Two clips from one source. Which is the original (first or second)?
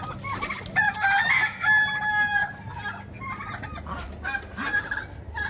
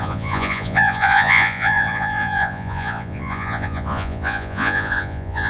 first